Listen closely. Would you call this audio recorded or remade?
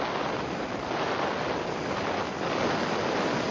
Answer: recorded